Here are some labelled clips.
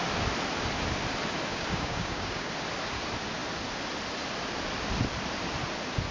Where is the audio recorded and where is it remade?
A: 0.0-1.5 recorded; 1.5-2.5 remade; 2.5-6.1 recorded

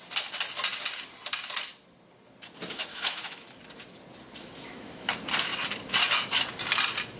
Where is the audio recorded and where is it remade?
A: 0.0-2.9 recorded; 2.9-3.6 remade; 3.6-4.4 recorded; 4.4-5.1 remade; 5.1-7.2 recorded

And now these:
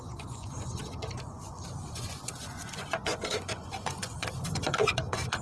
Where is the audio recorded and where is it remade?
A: 0.0-5.4 remade

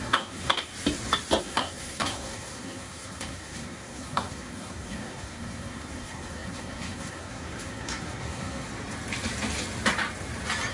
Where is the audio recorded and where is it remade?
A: 0.0-0.7 remade; 0.7-1.4 recorded; 1.4-8.7 remade; 8.7-10.7 recorded